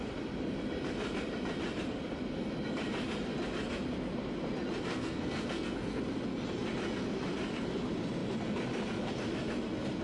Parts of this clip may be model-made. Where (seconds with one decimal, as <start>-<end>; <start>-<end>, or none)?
4.9-6.0